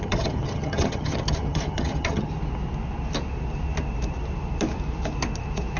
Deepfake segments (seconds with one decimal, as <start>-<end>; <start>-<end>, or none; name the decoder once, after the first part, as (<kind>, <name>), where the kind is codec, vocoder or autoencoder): 0.0-2.3 (vocoder, HiFi-GAN)